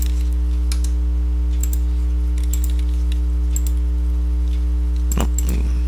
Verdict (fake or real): real